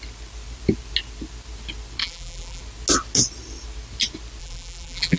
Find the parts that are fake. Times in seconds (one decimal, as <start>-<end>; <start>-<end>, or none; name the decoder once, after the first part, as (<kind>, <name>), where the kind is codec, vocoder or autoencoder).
2.0-2.6 (vocoder, BigVGAN v2); 4.4-5.2